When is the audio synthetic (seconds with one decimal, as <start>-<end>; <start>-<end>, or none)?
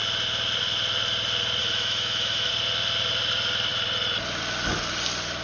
1.6-2.5